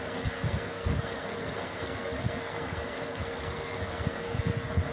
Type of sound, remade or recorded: remade